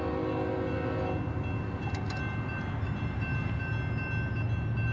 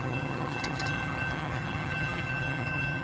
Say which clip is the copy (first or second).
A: second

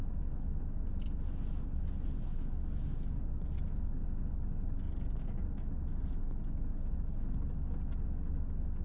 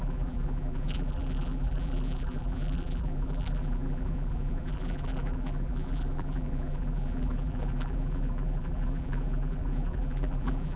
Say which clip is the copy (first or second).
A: second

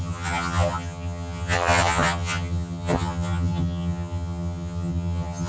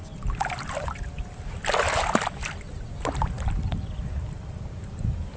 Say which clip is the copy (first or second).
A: first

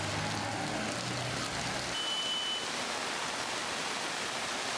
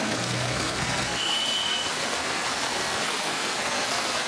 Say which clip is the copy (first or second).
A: second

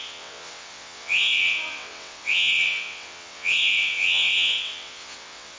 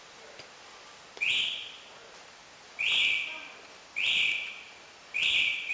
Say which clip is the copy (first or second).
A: first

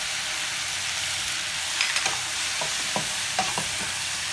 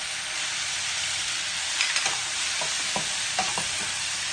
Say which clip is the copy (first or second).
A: second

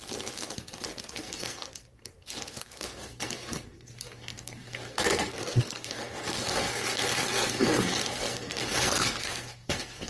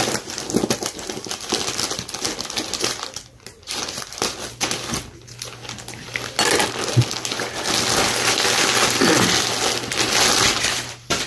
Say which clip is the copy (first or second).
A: first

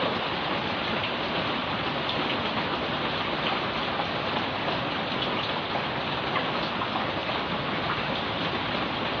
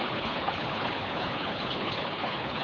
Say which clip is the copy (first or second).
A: second